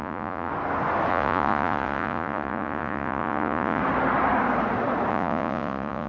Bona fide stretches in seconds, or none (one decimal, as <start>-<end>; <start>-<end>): 0.5-1.1; 3.8-5.1